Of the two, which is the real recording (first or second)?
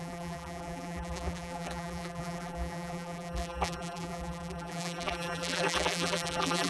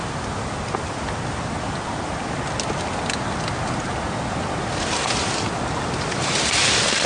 second